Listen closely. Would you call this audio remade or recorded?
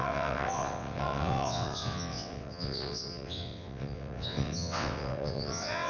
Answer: remade